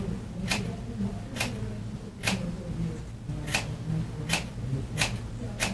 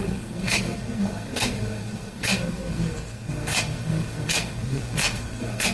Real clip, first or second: first